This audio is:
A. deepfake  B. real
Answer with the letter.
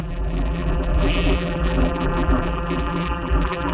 A